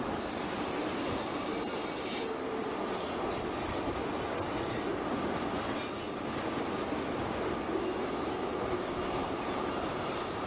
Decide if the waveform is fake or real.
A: real